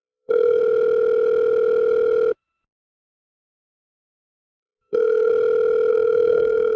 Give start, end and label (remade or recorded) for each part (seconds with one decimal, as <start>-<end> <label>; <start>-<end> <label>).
0.0-0.6 remade; 0.6-3.7 recorded; 3.7-5.3 remade; 5.3-5.9 recorded; 5.9-6.8 remade